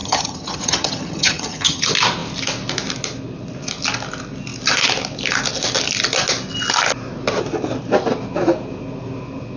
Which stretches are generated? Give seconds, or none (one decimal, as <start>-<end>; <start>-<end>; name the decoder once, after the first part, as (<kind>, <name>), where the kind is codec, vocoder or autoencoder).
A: 0.0-1.8 (vocoder, HiFi-GAN)